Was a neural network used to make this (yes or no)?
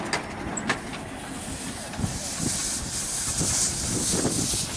no